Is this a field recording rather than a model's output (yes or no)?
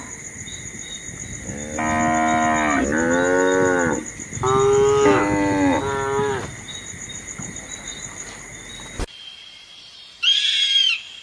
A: yes